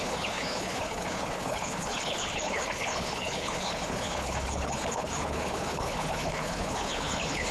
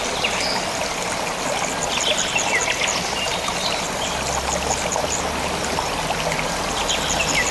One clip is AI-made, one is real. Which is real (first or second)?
second